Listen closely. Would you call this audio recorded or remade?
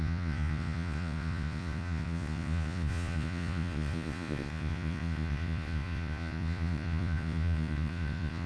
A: remade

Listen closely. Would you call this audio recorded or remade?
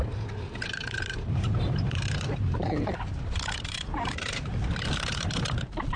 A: remade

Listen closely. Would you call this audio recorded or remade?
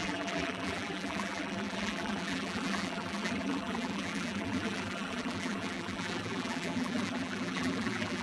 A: remade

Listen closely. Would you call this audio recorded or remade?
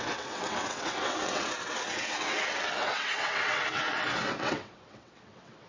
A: remade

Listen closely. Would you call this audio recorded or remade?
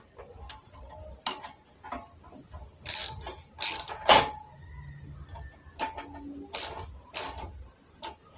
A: recorded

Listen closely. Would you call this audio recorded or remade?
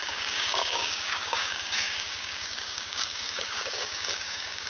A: remade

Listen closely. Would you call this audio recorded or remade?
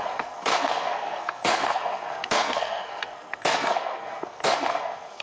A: remade